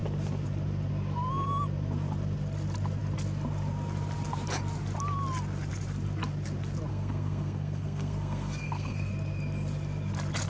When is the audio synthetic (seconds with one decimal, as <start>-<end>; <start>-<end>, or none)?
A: 6.9-9.1